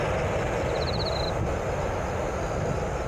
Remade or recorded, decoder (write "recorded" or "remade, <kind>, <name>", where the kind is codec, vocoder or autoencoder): recorded